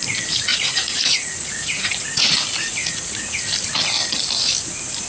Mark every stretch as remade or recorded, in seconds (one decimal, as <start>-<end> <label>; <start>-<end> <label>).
0.0-0.5 recorded; 0.5-2.3 remade; 2.3-2.8 recorded; 2.8-3.4 remade; 3.4-5.1 recorded